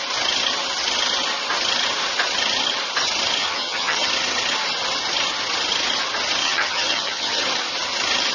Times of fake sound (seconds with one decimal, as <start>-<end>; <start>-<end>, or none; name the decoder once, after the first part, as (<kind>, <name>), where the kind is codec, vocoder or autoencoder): 3.4-4.1 (vocoder, HiFi-GAN); 6.4-7.4